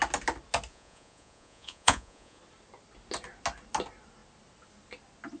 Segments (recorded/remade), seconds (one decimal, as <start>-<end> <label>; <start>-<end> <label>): 0.0-0.7 recorded; 0.7-2.4 remade; 2.4-5.4 recorded